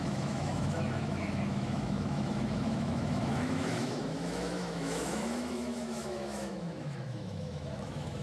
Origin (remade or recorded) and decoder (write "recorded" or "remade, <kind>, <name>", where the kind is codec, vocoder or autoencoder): remade, autoencoder, DAC-VAE